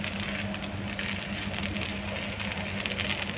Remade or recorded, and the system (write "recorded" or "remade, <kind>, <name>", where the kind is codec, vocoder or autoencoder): recorded